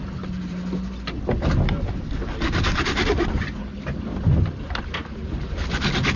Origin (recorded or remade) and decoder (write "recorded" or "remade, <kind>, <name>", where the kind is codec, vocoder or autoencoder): recorded